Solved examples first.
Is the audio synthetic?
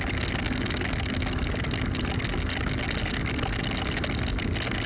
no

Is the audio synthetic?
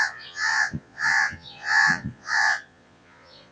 yes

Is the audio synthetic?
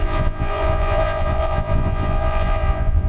yes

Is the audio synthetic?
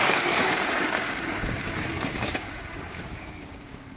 yes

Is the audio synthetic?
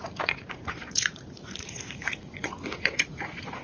yes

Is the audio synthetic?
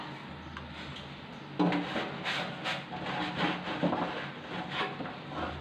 no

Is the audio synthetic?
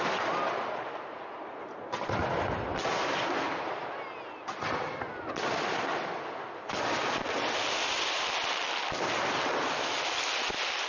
no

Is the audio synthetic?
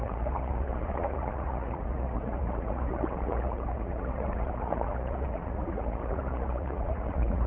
yes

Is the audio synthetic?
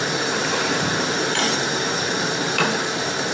yes